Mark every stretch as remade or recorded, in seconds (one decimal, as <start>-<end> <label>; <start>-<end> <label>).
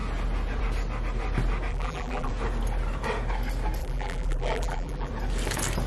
0.0-1.7 recorded; 1.7-2.3 remade; 2.3-3.8 recorded; 3.8-5.1 remade; 5.1-5.9 recorded